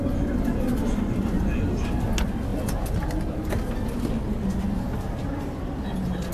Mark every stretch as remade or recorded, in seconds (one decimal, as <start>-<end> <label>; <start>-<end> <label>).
0.0-6.3 recorded